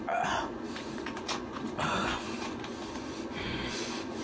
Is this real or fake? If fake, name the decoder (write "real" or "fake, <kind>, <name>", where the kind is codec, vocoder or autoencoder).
fake, vocoder, Vocos